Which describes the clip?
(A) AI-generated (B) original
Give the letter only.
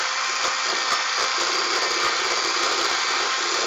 B